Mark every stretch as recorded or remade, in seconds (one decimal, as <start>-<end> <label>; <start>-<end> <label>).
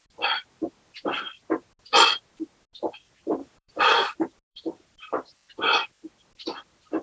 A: 0.0-3.4 recorded; 3.4-3.9 remade; 3.9-4.5 recorded; 4.5-5.5 remade; 5.5-7.0 recorded